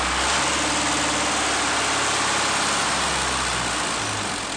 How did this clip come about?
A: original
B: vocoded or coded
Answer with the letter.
A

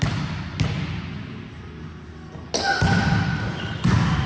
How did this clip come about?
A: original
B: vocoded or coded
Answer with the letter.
A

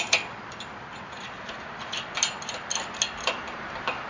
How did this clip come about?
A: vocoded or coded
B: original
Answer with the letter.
B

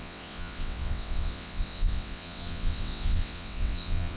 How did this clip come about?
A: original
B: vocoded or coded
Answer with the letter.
B